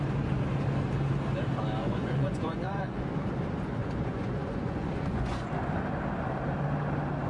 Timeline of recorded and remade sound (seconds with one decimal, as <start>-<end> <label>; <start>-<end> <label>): 0.0-1.8 recorded; 1.8-3.2 remade; 3.2-3.8 recorded; 3.8-5.5 remade; 5.5-7.3 recorded